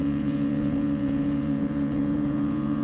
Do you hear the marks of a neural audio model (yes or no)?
yes